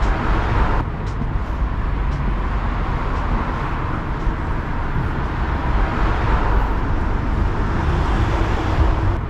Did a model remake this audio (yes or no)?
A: no